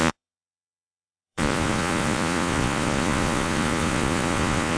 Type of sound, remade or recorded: remade